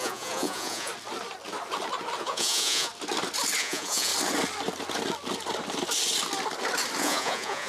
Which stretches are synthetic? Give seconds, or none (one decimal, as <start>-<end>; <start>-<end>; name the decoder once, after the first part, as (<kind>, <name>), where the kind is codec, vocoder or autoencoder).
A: 0.0-0.9 (vocoder, Vocos); 2.2-2.9; 3.6-4.1; 7.0-7.7